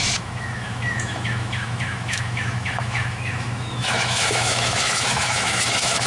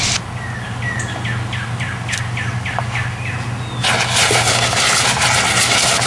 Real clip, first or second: second